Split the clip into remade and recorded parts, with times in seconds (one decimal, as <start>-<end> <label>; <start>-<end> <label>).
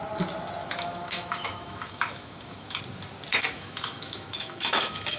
0.0-0.6 recorded; 0.6-2.8 remade; 2.8-3.3 recorded; 3.3-5.2 remade